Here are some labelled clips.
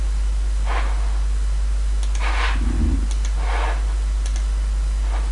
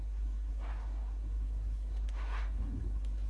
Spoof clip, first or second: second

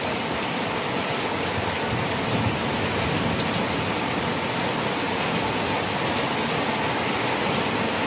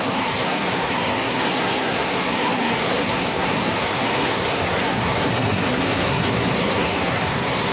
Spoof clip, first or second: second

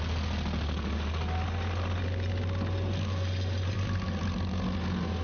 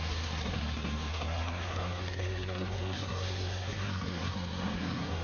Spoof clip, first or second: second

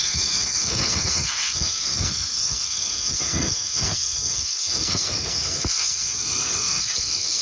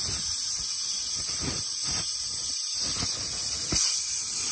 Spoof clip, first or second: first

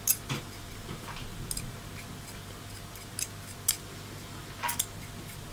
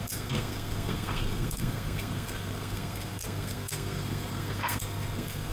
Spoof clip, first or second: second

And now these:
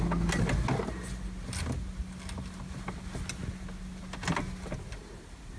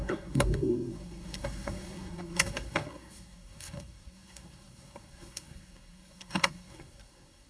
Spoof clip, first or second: second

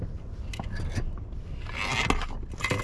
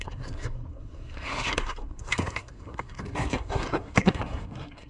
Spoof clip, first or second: second